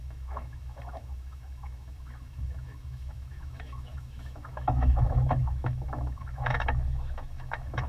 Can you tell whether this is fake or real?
fake